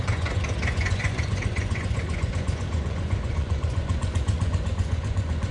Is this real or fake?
fake